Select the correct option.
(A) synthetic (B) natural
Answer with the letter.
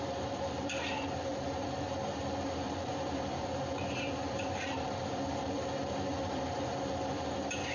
A